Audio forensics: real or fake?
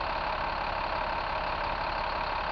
real